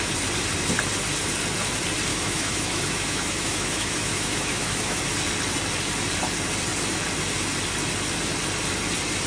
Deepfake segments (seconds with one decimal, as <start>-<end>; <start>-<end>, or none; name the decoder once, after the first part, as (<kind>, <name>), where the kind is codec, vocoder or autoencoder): 2.1-5.0 (autoencoder, DAC-VAE)